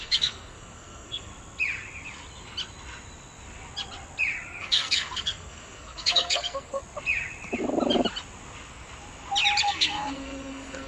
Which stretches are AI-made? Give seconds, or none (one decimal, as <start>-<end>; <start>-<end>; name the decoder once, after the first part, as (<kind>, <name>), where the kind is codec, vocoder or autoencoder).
0.0-1.3 (codec, SNAC); 4.6-6.8; 9.6-10.9